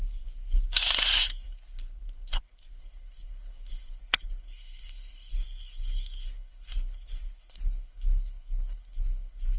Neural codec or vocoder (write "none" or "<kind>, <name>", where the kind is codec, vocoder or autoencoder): codec, SNAC